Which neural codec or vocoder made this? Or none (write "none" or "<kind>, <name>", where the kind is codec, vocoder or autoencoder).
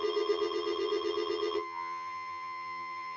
vocoder, HiFi-GAN